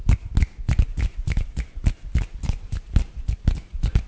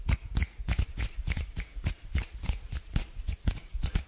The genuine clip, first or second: first